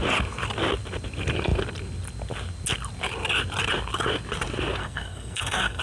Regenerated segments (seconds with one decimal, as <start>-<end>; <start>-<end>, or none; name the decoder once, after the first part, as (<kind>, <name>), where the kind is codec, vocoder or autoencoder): 4.8-5.8 (codec, SNAC)